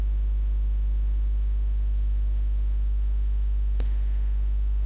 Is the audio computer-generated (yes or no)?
yes